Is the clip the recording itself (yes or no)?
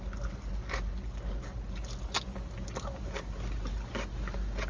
yes